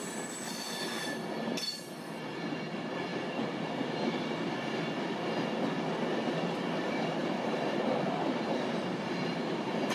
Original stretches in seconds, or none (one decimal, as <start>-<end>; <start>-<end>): 0.0-3.1; 4.5-7.2; 9.1-9.9